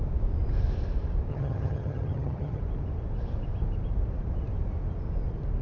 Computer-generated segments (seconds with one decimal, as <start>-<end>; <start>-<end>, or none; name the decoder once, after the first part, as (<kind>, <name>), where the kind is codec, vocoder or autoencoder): 1.3-2.6 (vocoder, HiFi-GAN)